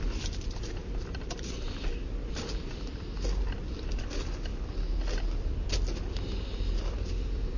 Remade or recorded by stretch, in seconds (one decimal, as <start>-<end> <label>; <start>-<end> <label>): 0.0-0.8 remade; 0.8-2.3 recorded; 2.3-2.9 remade; 2.9-3.6 recorded; 3.6-4.5 remade; 4.5-6.1 recorded; 6.1-7.6 remade